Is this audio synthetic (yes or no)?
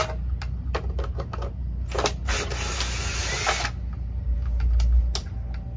no